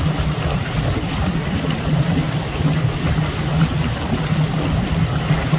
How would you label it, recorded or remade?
recorded